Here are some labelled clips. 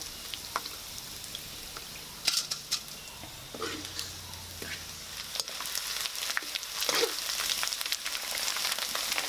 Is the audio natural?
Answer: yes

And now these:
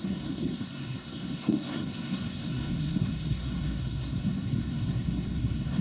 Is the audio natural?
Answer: no